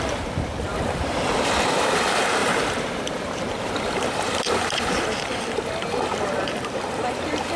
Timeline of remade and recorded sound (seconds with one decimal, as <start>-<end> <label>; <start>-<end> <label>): 0.0-0.7 recorded; 0.7-2.0 remade; 2.0-2.4 recorded; 2.4-5.4 remade; 5.4-6.1 recorded; 6.1-7.6 remade